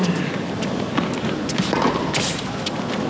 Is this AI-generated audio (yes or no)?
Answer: no